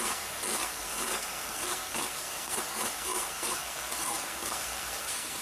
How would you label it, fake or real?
fake